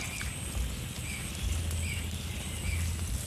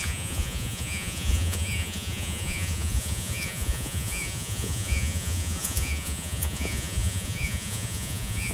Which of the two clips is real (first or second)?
first